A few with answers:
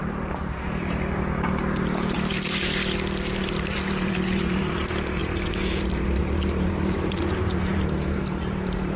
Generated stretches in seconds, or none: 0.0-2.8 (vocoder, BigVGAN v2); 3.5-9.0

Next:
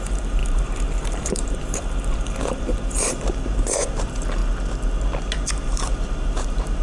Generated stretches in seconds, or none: 0.0-4.4 (vocoder, BigVGAN v2); 5.5-6.8

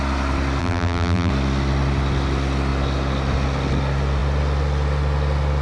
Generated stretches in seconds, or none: 0.6-1.3 (vocoder, BigVGAN v2)

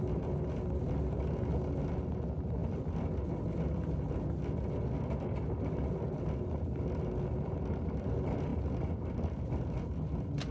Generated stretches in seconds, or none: 2.6-4.1 (vocoder, BigVGAN v2)

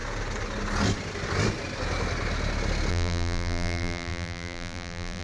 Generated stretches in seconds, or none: 2.9-5.2 (vocoder, BigVGAN v2)